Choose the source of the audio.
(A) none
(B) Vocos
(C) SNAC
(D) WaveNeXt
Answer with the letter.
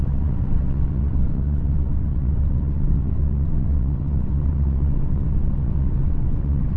D